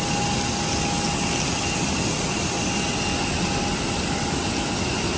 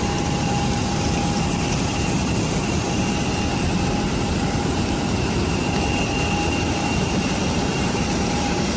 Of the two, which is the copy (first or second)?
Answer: second